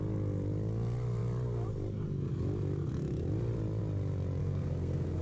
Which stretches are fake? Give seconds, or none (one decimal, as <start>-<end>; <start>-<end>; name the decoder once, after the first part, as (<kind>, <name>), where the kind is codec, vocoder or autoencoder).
4.4-5.2 (codec, SNAC)

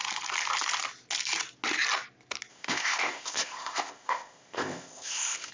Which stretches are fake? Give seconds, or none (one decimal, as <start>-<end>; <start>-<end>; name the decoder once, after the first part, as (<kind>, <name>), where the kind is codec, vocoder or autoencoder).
2.5-5.5 (codec, ZipCodec)

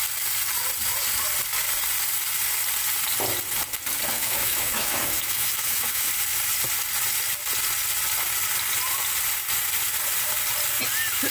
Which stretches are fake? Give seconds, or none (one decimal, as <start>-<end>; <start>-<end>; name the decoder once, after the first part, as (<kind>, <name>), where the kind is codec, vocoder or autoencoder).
4.1-6.1 (autoencoder, DAC-VAE)

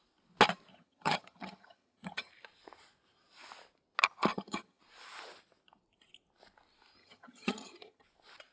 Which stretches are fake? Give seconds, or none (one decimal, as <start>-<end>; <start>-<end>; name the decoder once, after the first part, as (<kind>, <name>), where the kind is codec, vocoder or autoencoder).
0.7-2.3 (vocoder, HiFi-GAN); 4.3-4.8; 7.0-8.0

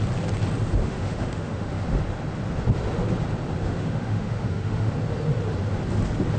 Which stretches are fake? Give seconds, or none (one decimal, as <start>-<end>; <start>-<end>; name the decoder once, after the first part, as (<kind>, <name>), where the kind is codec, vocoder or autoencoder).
0.8-1.8 (autoencoder, DAC-VAE); 3.6-4.9

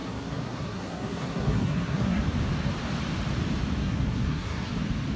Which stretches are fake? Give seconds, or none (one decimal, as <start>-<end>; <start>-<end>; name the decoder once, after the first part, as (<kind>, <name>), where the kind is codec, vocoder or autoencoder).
0.0-2.2 (codec, SNAC); 3.8-4.7